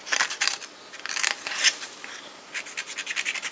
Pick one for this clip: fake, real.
real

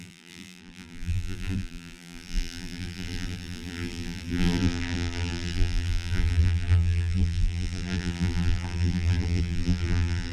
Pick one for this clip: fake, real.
fake